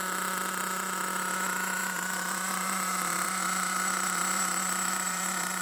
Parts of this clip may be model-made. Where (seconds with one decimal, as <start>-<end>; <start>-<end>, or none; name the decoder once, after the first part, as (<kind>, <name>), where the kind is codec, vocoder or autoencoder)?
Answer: 1.8-5.6 (vocoder, BigVGAN v2)